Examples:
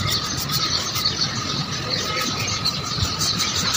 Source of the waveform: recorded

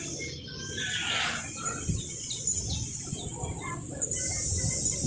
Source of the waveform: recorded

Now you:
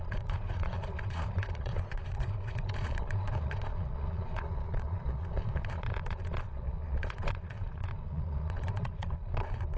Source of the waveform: remade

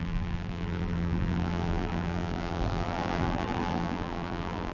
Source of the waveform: remade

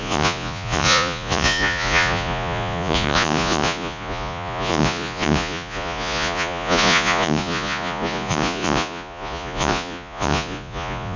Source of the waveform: remade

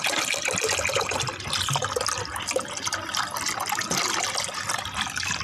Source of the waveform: recorded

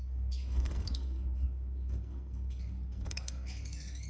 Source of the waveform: remade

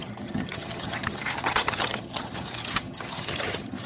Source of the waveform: remade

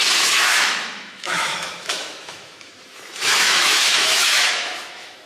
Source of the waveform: remade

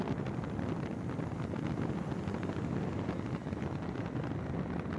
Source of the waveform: recorded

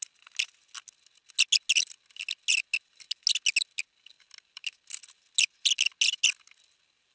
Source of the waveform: recorded